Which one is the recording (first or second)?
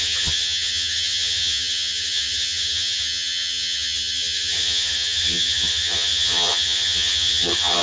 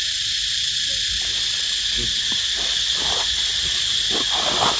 second